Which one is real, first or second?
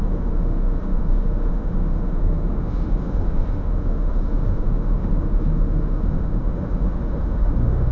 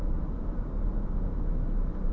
second